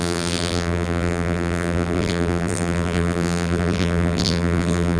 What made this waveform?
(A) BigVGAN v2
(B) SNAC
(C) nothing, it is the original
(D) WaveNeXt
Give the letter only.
A